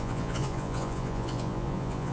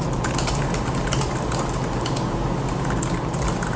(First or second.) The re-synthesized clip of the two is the first